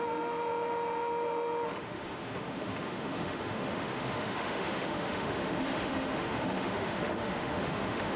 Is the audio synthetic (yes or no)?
yes